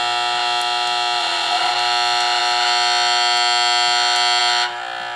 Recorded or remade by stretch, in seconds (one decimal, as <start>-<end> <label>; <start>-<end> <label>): 0.0-1.2 recorded; 1.2-1.7 remade; 1.7-5.2 recorded